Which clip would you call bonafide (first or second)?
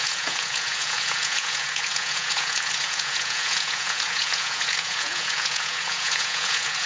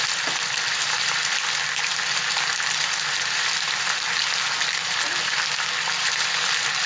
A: second